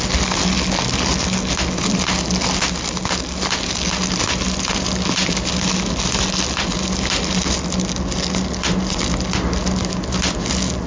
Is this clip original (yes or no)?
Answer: yes